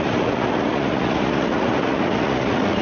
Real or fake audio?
fake